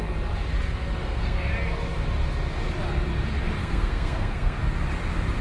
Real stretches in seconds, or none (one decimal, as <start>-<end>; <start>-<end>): 0.0-1.0; 1.5-3.6; 4.6-5.4